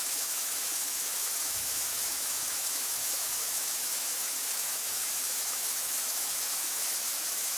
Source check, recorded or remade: remade